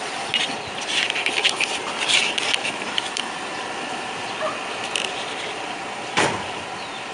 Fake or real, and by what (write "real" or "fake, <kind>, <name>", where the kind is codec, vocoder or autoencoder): real